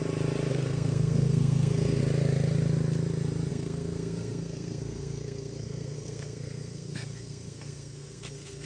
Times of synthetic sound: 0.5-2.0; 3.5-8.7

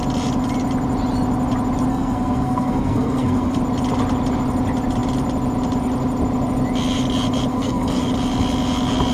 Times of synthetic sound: 1.9-3.6; 7.5-8.1